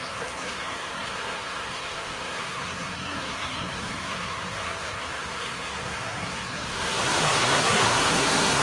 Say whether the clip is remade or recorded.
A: remade